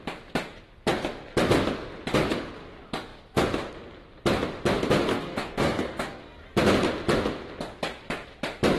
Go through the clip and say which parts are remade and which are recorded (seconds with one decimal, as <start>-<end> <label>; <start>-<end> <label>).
0.0-5.1 recorded; 5.1-6.2 remade; 6.2-8.8 recorded